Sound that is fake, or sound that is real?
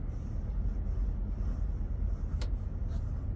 real